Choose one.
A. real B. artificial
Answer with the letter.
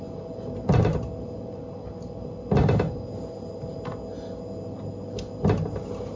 A